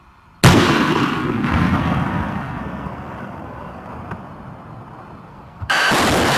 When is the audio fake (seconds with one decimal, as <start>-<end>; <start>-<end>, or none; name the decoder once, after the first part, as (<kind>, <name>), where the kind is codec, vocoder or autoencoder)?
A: 0.5-3.9 (codec, SNAC); 5.3-5.9